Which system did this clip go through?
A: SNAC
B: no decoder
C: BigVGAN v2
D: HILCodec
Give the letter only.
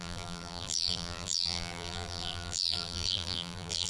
C